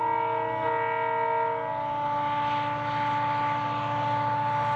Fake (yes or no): no